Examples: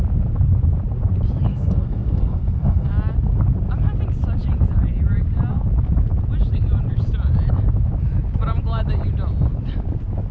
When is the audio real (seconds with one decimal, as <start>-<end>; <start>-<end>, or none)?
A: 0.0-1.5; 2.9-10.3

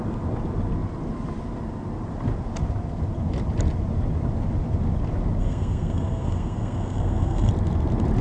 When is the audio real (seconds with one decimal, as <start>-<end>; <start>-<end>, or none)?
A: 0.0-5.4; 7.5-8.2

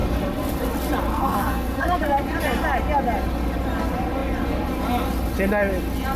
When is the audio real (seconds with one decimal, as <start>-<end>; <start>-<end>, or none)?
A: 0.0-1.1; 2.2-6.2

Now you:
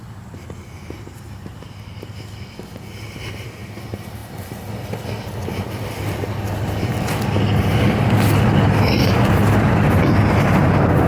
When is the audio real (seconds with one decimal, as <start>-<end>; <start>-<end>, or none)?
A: 0.0-11.1

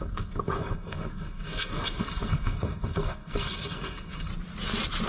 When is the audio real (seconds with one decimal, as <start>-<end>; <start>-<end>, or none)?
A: 4.3-5.1

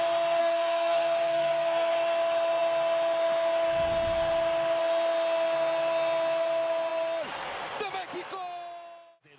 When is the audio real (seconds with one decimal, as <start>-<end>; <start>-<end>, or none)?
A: 0.0-0.4; 1.9-9.4

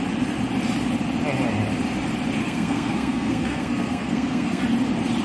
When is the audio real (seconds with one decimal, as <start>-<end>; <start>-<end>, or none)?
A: 0.0-2.4; 4.6-5.2

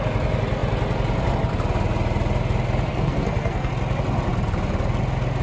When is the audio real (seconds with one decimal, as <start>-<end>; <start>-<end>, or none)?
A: 0.0-2.9; 3.7-5.4